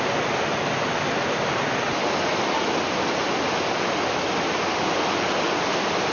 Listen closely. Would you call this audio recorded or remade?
recorded